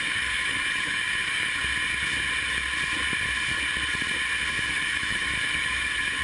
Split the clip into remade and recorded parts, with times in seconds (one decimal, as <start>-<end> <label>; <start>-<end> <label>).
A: 0.0-1.6 remade; 1.6-4.5 recorded; 4.5-6.2 remade